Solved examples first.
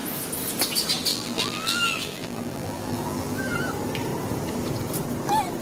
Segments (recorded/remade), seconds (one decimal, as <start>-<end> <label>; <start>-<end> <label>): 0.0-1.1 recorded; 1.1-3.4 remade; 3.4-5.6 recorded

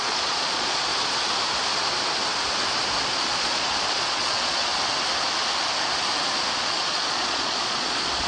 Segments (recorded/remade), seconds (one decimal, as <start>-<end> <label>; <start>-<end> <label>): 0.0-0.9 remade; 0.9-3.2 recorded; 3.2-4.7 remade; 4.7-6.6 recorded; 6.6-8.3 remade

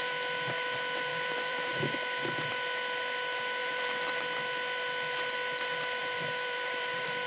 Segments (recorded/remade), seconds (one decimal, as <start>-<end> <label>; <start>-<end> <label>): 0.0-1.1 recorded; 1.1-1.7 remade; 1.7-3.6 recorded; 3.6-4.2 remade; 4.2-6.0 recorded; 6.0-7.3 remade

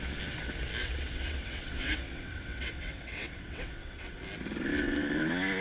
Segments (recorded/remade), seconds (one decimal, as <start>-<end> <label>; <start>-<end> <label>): 0.0-0.8 recorded; 0.8-4.2 remade; 4.2-5.6 recorded